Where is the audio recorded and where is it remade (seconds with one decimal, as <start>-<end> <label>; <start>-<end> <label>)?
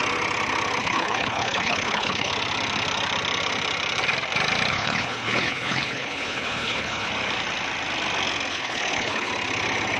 0.0-0.8 recorded; 0.8-2.3 remade; 2.3-4.7 recorded; 4.7-7.1 remade; 7.1-8.5 recorded; 8.5-9.3 remade; 9.3-10.0 recorded